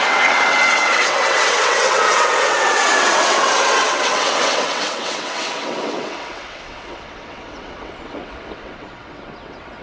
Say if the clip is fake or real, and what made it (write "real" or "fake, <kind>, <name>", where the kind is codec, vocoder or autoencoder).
fake, vocoder, WaveNeXt